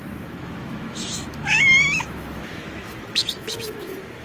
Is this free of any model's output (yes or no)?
no